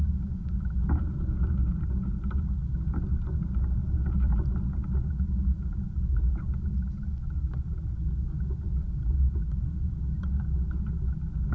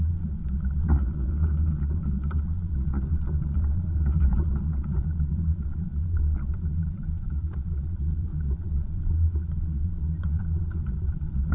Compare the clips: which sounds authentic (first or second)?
first